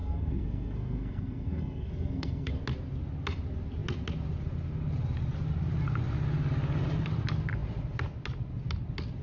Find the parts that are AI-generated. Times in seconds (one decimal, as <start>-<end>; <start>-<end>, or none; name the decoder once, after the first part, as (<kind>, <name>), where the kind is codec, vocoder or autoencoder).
0.0-2.5 (codec, SNAC)